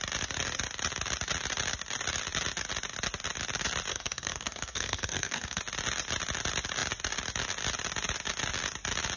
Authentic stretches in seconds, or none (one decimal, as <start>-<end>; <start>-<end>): 0.0-3.9; 5.6-9.2